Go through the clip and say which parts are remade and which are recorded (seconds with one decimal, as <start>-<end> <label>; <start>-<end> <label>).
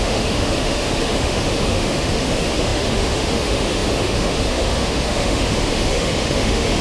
0.0-6.8 remade